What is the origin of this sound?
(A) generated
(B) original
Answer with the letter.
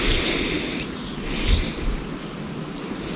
B